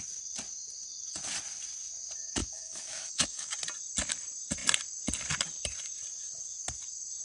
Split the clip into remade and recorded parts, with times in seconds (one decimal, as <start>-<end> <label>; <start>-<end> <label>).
0.0-2.4 recorded; 2.4-3.5 remade; 3.5-7.2 recorded